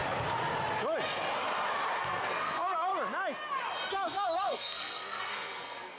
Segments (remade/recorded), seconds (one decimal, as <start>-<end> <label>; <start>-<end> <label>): 0.0-2.0 recorded; 2.0-2.9 remade; 2.9-3.9 recorded; 3.9-6.0 remade